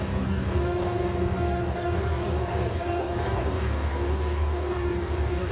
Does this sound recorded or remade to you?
remade